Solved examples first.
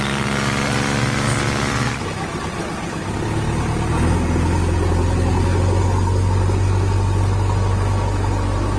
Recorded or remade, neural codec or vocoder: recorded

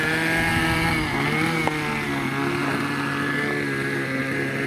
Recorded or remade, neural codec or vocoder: recorded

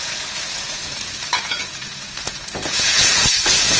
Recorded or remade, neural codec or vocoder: remade, vocoder, Vocos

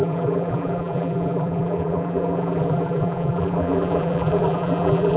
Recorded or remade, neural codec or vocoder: remade, vocoder, BigVGAN v2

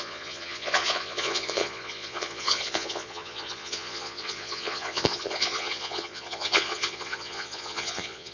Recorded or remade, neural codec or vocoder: remade, vocoder, Vocos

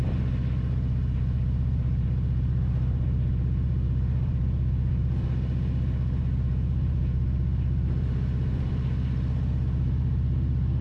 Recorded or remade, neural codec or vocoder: recorded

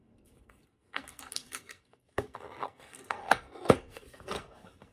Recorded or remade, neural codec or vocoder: remade, codec, SNAC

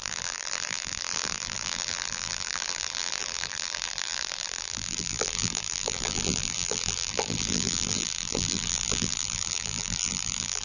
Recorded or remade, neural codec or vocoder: remade, vocoder, BigVGAN v2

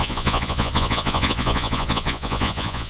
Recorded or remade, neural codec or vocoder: remade, vocoder, Vocos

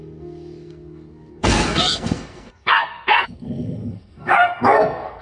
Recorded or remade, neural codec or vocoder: remade, codec, SNAC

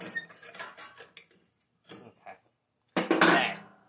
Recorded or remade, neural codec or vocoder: recorded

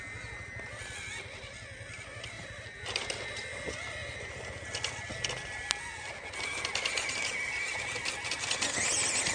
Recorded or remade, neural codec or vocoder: recorded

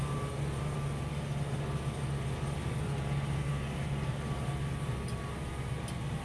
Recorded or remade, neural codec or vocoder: recorded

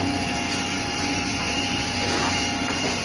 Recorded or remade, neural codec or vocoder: remade, vocoder, Vocos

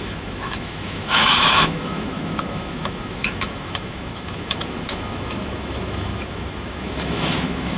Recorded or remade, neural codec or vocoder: remade, autoencoder, DAC-VAE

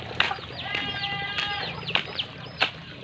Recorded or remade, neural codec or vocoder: remade, vocoder, BigVGAN v2